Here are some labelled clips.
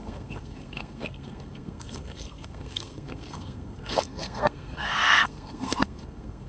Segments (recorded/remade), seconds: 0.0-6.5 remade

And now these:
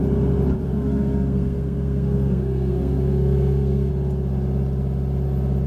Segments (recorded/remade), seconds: 0.0-0.7 recorded; 0.7-3.9 remade; 3.9-5.7 recorded

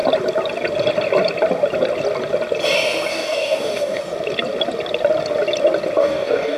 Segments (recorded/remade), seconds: 0.0-3.1 recorded; 3.1-4.0 remade; 4.0-6.0 recorded; 6.0-6.6 remade